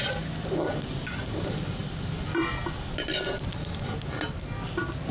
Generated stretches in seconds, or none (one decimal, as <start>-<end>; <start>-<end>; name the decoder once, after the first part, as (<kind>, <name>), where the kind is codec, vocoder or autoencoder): 1.8-2.5 (vocoder, BigVGAN v2)